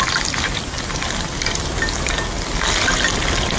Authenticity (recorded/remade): recorded